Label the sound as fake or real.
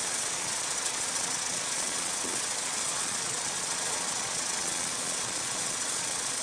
fake